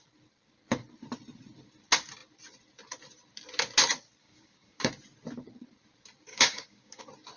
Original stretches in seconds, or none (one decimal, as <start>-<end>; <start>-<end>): 0.0-4.2; 4.9-6.3; 7.0-7.4